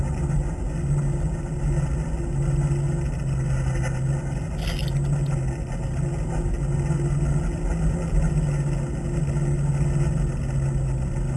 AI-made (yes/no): no